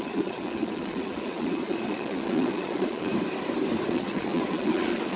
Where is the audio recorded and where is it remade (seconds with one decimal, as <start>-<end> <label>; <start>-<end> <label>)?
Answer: 0.0-3.1 remade; 3.1-3.9 recorded; 3.9-5.2 remade